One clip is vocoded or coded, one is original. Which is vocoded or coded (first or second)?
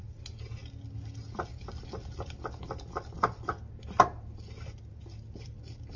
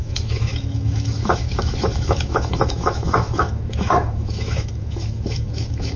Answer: second